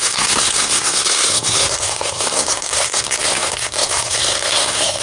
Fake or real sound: fake